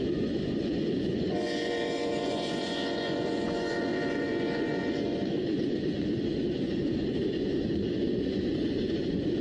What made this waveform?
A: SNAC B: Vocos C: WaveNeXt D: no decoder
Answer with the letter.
B